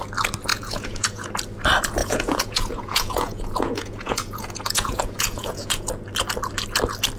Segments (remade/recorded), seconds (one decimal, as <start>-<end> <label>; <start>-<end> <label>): 0.0-0.5 recorded; 0.5-1.3 remade; 1.3-2.0 recorded; 2.0-5.9 remade; 5.9-7.2 recorded